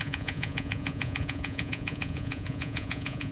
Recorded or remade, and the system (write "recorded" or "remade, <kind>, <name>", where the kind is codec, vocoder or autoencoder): remade, vocoder, Vocos